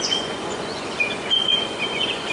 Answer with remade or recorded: remade